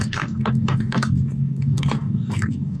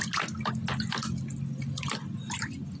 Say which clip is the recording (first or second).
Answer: second